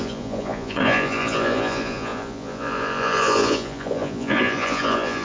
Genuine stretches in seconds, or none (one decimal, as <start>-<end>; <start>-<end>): none